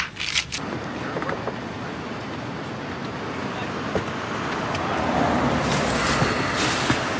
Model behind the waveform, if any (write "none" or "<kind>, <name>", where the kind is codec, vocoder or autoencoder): none